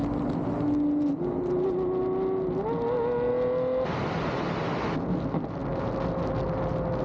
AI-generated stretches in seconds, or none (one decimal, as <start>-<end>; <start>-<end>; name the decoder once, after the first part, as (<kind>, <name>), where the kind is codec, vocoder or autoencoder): none